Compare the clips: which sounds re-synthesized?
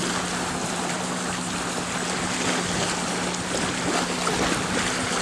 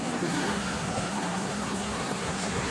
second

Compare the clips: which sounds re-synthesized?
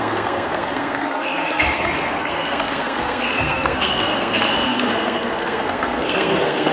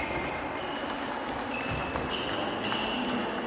first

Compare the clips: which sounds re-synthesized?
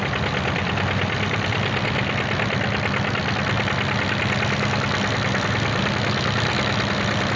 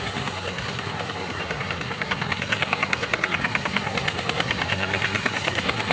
second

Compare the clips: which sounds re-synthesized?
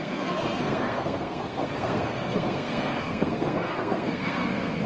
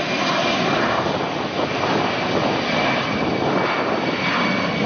first